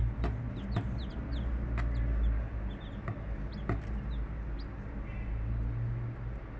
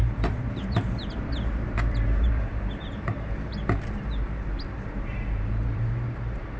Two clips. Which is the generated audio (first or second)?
second